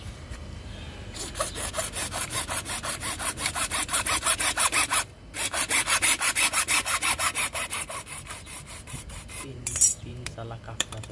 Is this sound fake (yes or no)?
yes